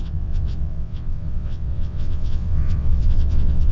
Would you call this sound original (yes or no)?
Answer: no